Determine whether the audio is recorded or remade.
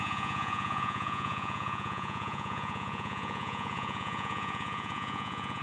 remade